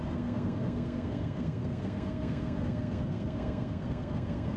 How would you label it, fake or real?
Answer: fake